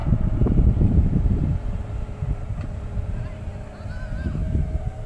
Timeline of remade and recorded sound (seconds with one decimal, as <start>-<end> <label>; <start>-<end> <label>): 0.0-3.5 remade; 3.5-4.2 recorded; 4.2-5.1 remade